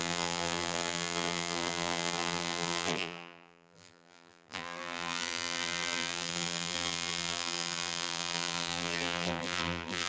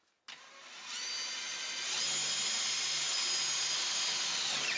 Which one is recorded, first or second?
second